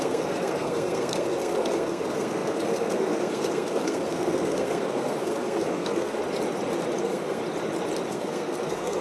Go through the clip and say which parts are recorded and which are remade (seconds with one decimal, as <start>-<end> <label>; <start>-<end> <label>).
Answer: 0.0-6.2 remade; 6.2-7.0 recorded; 7.0-7.4 remade; 7.4-8.1 recorded; 8.1-9.0 remade